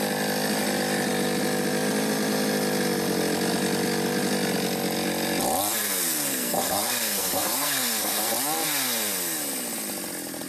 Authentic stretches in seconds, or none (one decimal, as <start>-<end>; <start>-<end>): 0.0-5.8; 8.3-10.5